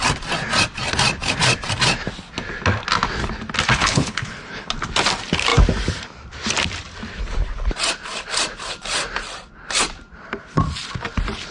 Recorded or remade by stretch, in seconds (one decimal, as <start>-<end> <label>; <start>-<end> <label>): 0.0-3.7 recorded; 3.7-4.7 remade; 4.7-11.5 recorded